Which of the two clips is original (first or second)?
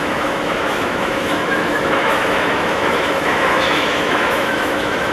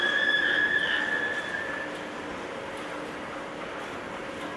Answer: second